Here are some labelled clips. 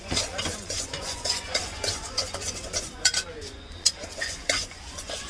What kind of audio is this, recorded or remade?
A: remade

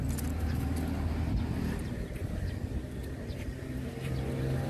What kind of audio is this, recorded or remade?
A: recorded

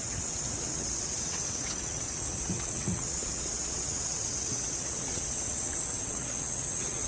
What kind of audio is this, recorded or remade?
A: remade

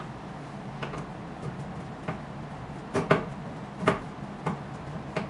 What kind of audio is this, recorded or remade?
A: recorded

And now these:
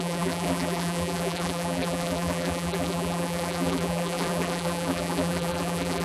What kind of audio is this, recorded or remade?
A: remade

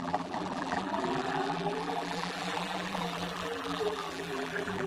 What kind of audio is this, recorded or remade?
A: remade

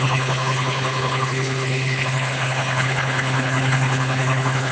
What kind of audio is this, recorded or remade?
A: remade